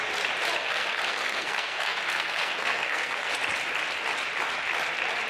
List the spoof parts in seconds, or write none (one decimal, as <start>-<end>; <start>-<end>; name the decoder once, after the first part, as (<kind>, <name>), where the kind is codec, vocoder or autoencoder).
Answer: 0.6-3.3 (codec, SNAC)